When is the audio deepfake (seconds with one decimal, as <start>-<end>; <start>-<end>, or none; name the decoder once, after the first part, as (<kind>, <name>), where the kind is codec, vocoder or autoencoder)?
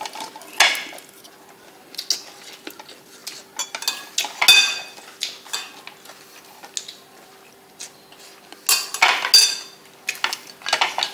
none